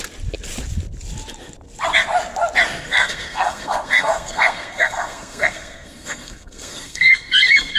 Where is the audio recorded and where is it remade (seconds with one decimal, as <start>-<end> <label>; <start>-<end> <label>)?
0.0-2.9 recorded; 2.9-7.8 remade